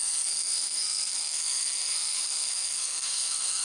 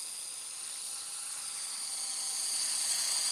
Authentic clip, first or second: second